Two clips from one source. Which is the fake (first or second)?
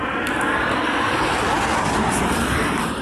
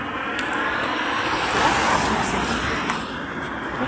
first